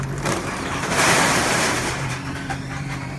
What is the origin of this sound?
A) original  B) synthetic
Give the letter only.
B